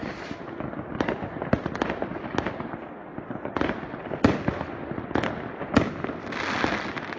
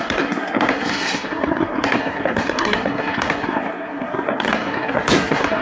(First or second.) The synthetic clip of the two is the second